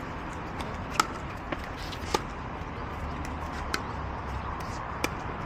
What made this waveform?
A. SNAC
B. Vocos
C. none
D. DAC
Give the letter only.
C